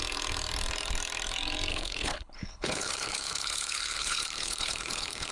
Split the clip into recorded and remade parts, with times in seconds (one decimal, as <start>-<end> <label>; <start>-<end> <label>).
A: 0.0-1.7 recorded; 1.7-5.3 remade